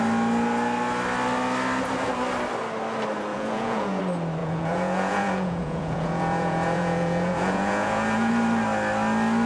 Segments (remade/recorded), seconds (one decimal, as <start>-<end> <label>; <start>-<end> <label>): 0.0-3.3 recorded; 3.3-4.0 remade; 4.0-4.4 recorded; 4.4-8.3 remade; 8.3-9.5 recorded